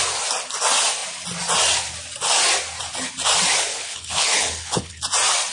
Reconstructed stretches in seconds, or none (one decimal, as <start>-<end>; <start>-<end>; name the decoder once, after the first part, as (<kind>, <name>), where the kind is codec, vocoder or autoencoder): 3.7-5.0 (codec, HILCodec)